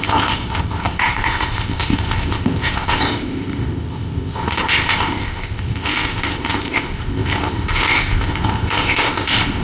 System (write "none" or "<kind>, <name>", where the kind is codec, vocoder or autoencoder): codec, ZipCodec